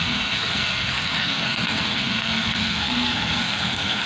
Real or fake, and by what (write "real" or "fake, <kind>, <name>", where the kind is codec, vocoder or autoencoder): fake, codec, SNAC